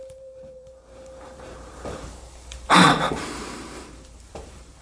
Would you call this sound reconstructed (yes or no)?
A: yes